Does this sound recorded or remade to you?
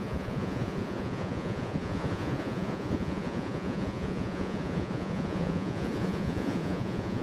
remade